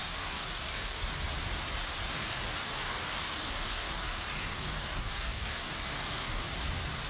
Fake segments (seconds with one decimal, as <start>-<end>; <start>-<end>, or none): 0.0-1.1; 2.1-6.4